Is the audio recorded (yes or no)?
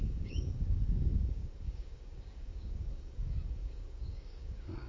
no